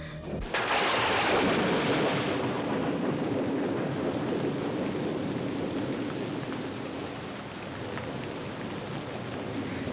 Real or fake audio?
real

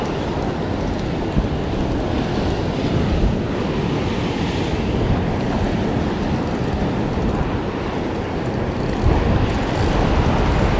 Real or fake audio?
real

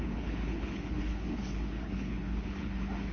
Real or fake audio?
fake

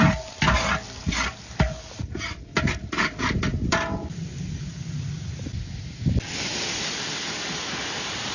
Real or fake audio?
real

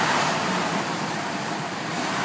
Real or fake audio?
fake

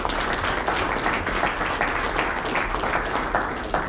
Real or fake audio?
real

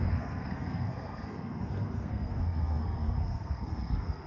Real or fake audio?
fake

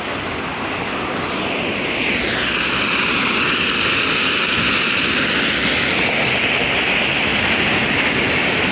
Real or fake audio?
real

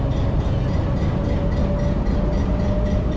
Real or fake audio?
real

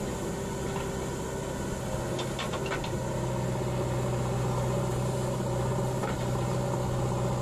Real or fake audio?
real